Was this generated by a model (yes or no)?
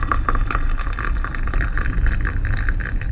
yes